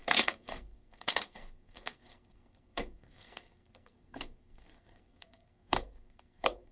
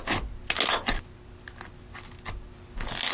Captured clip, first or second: second